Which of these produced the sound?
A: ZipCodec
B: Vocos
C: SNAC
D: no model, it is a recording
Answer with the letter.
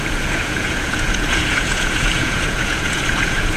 B